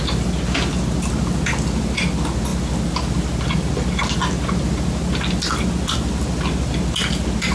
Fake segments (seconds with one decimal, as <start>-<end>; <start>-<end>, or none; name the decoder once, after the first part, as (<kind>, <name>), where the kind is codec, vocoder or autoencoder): none